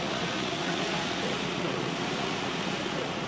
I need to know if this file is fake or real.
fake